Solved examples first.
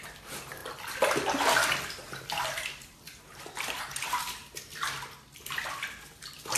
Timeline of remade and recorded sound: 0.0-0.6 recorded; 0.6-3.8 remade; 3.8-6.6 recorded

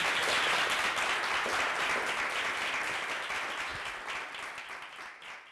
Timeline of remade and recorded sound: 0.0-5.5 recorded

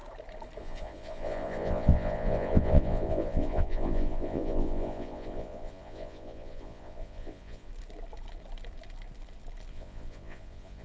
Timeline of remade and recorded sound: 0.0-0.6 recorded; 0.6-7.7 remade; 7.7-9.7 recorded; 9.7-10.8 remade

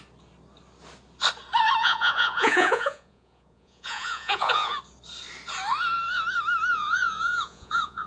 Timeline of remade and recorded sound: 0.0-1.8 recorded; 1.8-4.8 remade; 4.8-6.7 recorded; 6.7-8.1 remade

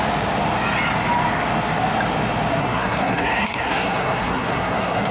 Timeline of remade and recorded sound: 0.0-2.6 recorded; 2.6-5.1 remade

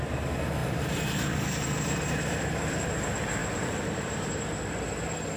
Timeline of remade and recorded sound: 0.0-0.6 recorded; 0.6-2.5 remade; 2.5-3.4 recorded; 3.4-4.4 remade; 4.4-5.4 recorded

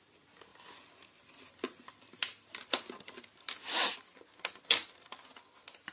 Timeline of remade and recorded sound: 0.0-5.9 recorded